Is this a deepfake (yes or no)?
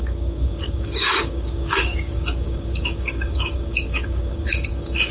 yes